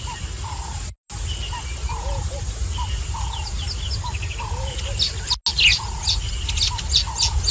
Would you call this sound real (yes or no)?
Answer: yes